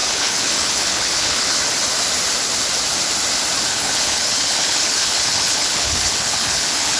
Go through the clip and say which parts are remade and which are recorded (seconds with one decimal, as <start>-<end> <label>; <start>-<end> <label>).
0.0-1.6 remade; 1.6-3.7 recorded; 3.7-7.0 remade